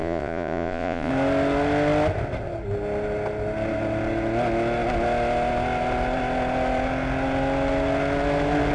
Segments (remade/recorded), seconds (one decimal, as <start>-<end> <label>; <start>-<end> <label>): 0.0-1.1 remade; 1.1-8.7 recorded